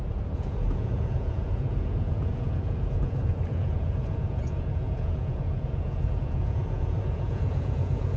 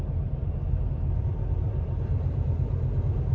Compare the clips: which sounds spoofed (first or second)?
first